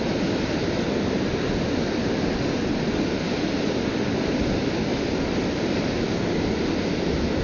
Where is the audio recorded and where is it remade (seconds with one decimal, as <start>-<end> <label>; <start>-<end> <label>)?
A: 0.0-7.4 recorded